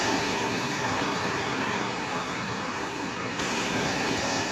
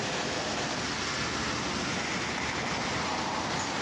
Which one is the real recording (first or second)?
second